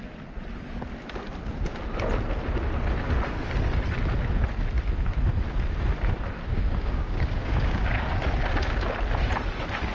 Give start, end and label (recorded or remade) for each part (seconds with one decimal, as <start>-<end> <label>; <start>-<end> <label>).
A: 0.0-6.5 recorded; 6.5-7.9 remade; 7.9-9.9 recorded